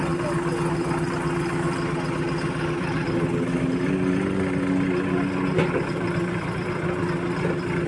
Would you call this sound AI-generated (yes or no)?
no